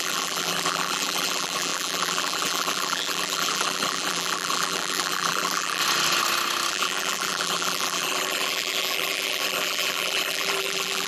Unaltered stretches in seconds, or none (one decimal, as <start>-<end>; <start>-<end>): 5.8-6.7